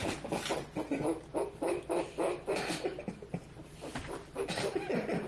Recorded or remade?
recorded